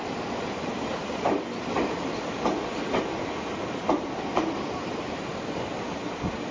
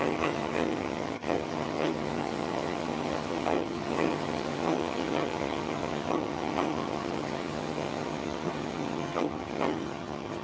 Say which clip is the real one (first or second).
first